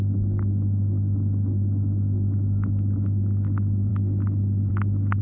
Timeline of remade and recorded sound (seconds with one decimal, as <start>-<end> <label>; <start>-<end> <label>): 0.0-5.2 recorded